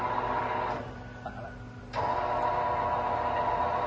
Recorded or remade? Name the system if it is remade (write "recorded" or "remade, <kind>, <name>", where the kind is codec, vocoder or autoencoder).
recorded